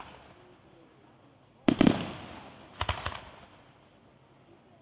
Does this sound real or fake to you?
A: real